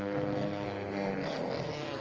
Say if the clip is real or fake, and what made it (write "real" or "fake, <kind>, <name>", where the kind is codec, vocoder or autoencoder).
fake, codec, SNAC